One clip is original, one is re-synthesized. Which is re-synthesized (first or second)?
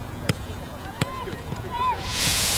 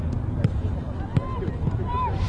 first